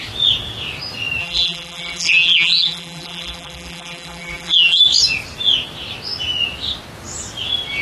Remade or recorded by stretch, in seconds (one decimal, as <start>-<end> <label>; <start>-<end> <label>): 0.0-1.2 recorded; 1.2-4.8 remade; 4.8-7.8 recorded